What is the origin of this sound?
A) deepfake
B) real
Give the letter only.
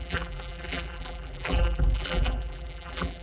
A